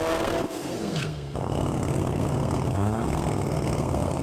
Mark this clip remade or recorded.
remade